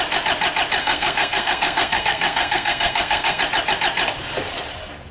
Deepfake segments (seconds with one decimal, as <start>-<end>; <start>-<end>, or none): 0.8-3.4